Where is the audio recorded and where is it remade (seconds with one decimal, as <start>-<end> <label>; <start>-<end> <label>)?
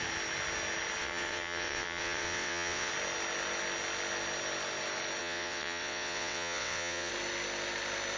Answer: 0.0-1.0 recorded; 1.0-2.9 remade; 2.9-5.2 recorded; 5.2-7.1 remade; 7.1-8.2 recorded